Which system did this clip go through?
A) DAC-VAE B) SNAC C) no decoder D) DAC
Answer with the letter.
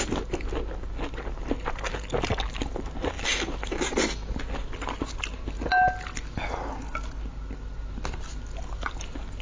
C